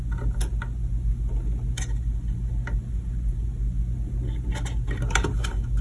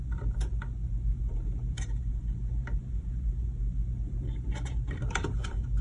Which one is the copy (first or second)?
second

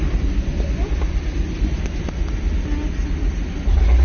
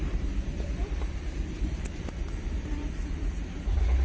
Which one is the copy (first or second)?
second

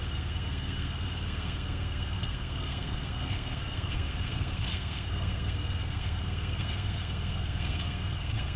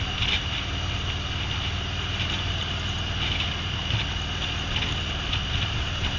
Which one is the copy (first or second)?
first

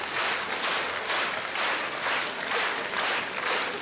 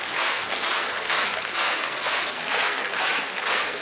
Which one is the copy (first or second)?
second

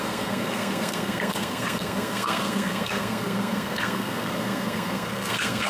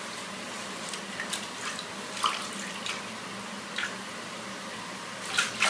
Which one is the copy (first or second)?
first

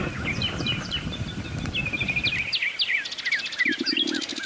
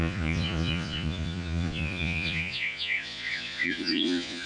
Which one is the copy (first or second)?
second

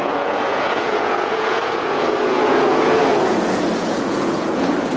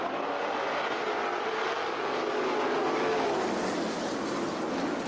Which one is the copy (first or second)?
first